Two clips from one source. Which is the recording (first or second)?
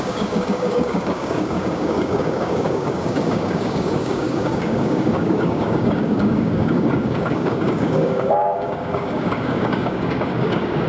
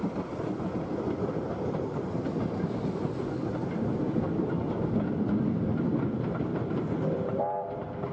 second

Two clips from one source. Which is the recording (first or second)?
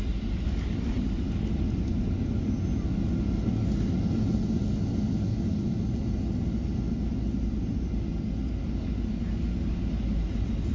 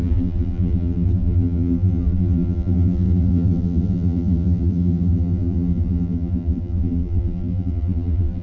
first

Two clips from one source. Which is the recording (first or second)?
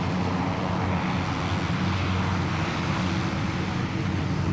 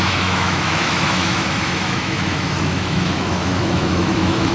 first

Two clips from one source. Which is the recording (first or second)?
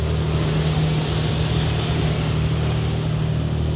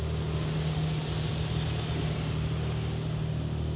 first